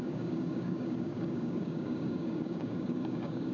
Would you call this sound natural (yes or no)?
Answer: no